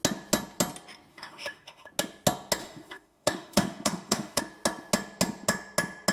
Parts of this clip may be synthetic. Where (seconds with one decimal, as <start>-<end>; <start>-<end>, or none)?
1.1-1.9; 2.6-4.4